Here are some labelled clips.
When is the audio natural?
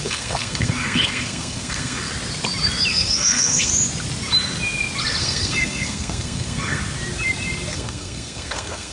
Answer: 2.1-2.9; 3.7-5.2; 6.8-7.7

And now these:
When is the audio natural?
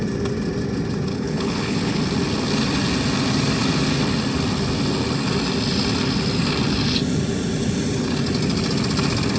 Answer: 0.0-1.1; 2.0-9.4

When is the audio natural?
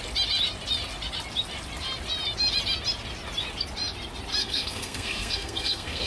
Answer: 0.0-4.4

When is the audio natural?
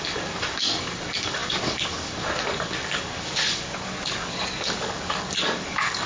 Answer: none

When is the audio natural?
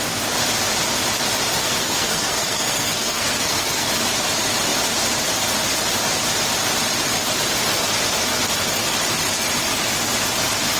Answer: 0.0-1.6; 3.9-10.8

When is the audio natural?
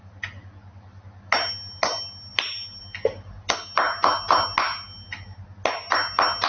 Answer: 0.0-6.5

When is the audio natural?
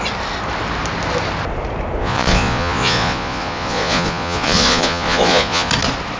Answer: 0.0-2.0; 5.7-6.2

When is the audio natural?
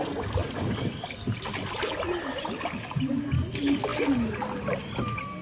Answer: 0.0-5.4